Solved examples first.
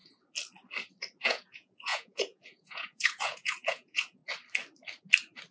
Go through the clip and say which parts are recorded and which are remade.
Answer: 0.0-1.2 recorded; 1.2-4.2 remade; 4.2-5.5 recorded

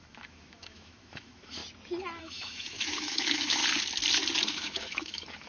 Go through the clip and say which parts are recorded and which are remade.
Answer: 0.0-1.6 remade; 1.6-2.2 recorded; 2.2-3.6 remade; 3.6-4.5 recorded; 4.5-5.5 remade

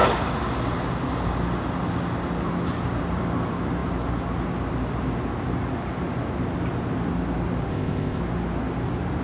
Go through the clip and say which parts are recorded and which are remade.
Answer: 0.0-7.7 recorded; 7.7-8.2 remade; 8.2-9.2 recorded

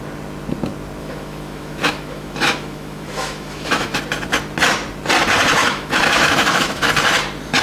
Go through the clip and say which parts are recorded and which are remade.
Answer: 0.0-1.0 recorded; 1.0-4.0 remade; 4.0-5.6 recorded; 5.6-6.9 remade; 6.9-7.6 recorded

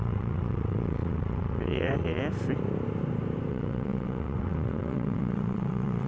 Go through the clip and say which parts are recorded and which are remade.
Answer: 0.0-2.2 remade; 2.2-3.5 recorded; 3.5-6.1 remade

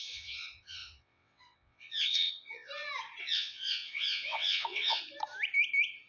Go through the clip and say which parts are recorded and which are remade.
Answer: 0.0-2.7 remade; 2.7-3.2 recorded; 3.2-5.0 remade; 5.0-6.1 recorded

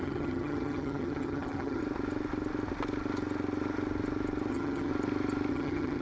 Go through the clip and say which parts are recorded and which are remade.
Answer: 0.0-1.8 remade; 1.8-4.5 recorded; 4.5-4.9 remade; 4.9-5.5 recorded; 5.5-6.0 remade